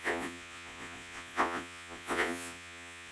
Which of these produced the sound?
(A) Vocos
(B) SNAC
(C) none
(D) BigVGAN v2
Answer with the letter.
A